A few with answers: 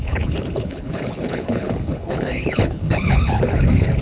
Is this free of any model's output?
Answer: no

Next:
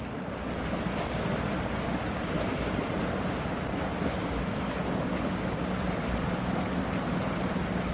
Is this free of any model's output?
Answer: yes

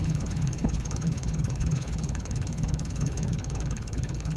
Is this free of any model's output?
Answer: no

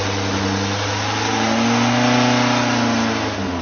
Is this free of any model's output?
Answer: yes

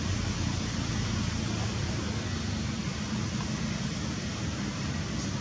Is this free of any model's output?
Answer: yes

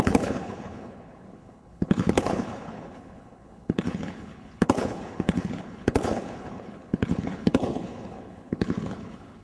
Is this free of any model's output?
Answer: no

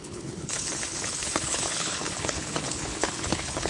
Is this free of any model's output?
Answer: no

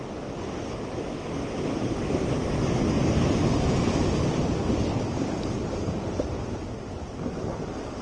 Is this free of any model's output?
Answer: yes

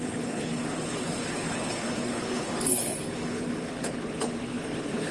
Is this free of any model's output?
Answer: no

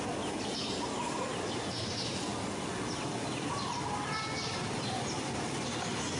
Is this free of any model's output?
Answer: yes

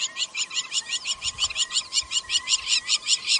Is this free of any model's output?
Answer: yes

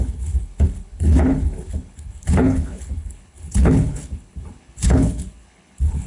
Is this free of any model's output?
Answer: no